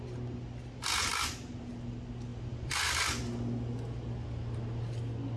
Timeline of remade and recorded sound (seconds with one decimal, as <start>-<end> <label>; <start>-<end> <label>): 0.0-2.3 recorded; 2.3-3.0 remade; 3.0-5.4 recorded